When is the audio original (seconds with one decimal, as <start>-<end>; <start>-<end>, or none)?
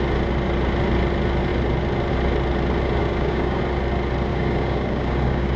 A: 0.0-3.0; 3.6-4.3